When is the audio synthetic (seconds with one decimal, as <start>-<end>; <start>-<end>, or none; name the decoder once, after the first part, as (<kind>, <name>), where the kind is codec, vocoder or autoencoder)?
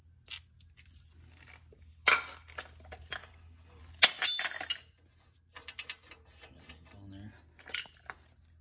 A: 3.2-3.8 (codec, HILCodec)